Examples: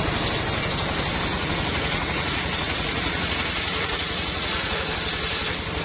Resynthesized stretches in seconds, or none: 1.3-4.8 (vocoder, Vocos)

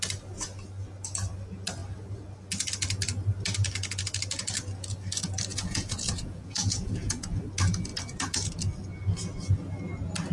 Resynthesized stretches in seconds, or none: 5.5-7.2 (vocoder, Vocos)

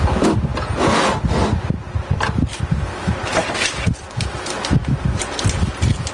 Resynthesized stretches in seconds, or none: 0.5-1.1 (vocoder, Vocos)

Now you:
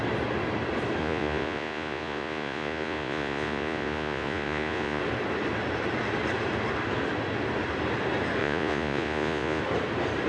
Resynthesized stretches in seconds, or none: 1.0-5.0 (vocoder, Vocos); 8.4-9.6

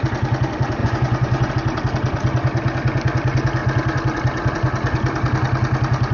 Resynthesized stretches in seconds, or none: 0.8-1.5 (vocoder, Vocos)

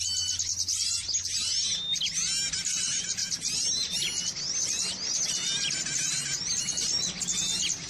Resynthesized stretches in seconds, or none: none